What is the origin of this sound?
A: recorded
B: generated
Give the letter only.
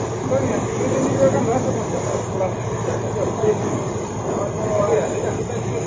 A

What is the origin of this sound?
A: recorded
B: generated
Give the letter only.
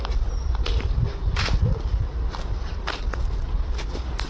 A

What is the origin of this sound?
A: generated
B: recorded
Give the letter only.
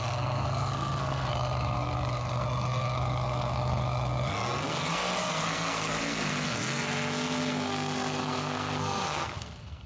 A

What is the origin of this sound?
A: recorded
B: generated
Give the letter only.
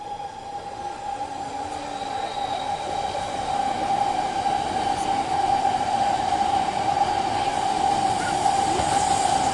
A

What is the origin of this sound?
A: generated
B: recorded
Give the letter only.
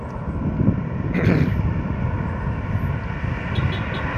B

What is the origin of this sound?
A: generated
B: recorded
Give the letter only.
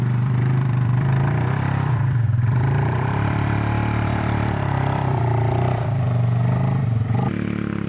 A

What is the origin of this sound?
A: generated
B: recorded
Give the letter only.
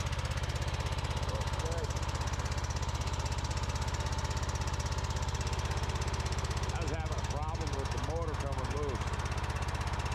B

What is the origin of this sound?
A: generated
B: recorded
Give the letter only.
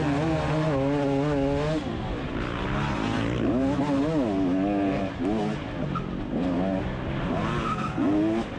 B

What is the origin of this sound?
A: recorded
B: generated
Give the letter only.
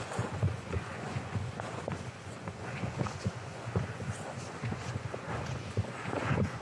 B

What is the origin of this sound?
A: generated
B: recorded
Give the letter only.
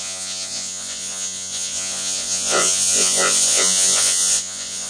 A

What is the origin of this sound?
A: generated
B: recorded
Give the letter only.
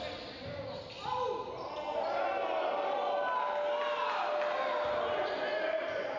B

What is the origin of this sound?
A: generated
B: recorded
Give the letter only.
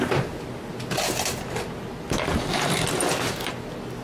B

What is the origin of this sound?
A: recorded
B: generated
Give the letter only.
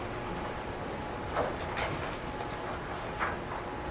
A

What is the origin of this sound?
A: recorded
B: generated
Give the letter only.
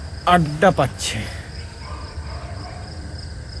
B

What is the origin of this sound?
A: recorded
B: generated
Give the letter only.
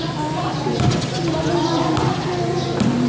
A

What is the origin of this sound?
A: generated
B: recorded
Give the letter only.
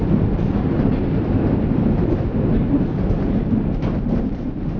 A